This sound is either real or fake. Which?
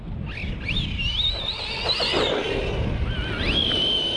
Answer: real